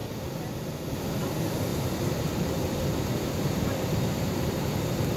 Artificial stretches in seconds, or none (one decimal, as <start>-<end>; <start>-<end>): 1.7-4.8